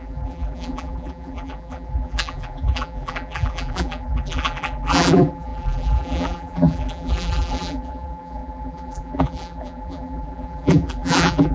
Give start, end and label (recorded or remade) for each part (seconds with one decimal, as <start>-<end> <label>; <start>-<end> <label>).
0.0-11.5 remade